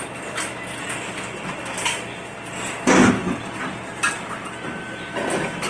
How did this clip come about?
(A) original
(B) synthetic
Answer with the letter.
A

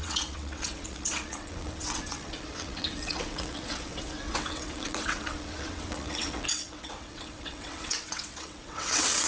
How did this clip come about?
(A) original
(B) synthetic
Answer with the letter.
B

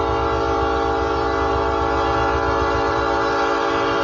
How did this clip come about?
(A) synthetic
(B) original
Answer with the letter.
B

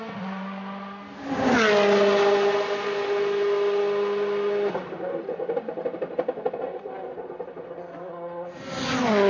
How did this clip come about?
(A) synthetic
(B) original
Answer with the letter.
B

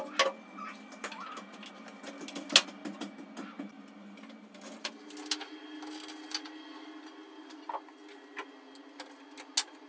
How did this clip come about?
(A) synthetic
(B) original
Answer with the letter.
B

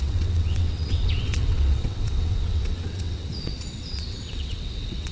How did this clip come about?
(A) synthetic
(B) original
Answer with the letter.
A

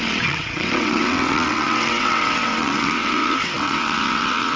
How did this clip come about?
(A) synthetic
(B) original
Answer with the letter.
A